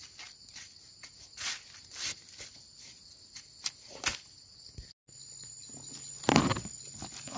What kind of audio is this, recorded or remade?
recorded